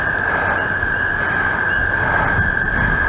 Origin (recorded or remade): recorded